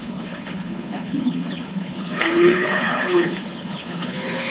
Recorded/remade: remade